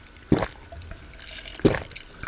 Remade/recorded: recorded